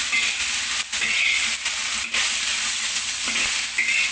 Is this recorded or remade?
recorded